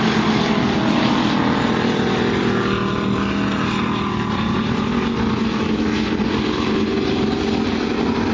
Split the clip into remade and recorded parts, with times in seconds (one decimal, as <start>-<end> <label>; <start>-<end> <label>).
0.0-5.4 recorded; 5.4-6.1 remade; 6.1-8.3 recorded